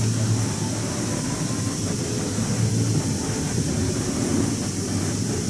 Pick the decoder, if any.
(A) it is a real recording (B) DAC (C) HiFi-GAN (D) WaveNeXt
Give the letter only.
A